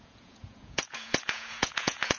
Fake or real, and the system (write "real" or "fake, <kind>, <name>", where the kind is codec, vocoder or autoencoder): fake, vocoder, Vocos